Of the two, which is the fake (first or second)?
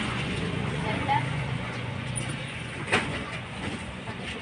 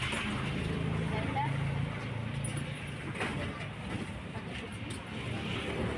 first